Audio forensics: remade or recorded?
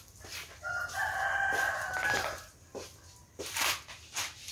recorded